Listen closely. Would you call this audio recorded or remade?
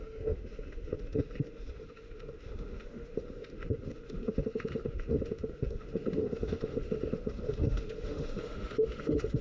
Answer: remade